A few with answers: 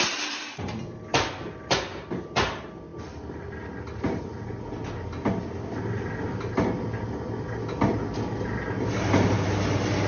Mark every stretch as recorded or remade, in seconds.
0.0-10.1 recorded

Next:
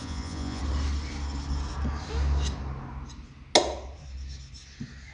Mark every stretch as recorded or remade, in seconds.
0.0-0.6 remade; 0.6-5.1 recorded